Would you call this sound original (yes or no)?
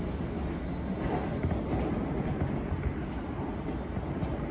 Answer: yes